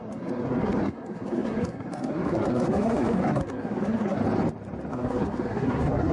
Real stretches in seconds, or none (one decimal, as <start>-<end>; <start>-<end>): 4.2-4.9

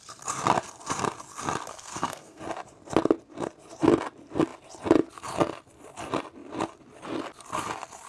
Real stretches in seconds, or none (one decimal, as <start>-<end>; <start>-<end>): 0.0-1.7; 2.4-8.1

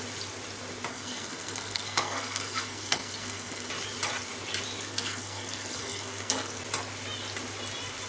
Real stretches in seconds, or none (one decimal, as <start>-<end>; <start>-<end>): 0.0-0.9; 3.7-4.9; 6.6-8.1

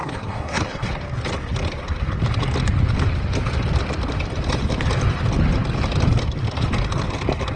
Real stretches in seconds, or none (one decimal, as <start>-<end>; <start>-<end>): 0.9-7.6